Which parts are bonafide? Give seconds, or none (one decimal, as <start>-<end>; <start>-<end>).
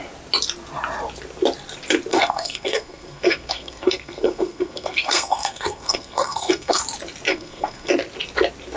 0.0-2.1; 6.8-7.3; 7.9-8.8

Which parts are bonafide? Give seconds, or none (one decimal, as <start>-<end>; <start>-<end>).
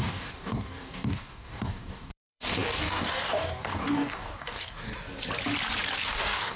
4.9-6.1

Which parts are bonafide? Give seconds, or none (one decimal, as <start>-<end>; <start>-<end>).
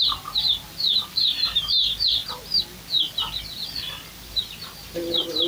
2.2-4.2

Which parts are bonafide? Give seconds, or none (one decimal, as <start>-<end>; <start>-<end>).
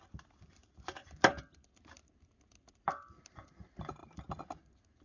0.0-5.0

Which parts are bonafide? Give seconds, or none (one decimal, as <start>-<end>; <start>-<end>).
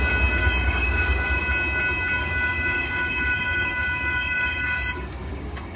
0.0-0.4; 1.4-2.2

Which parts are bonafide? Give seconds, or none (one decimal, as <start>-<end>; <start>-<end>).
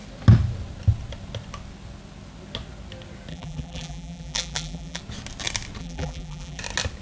0.0-3.3; 5.0-5.8; 6.6-7.0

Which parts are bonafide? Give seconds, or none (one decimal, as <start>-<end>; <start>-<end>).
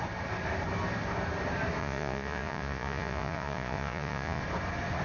0.0-1.8; 4.4-5.0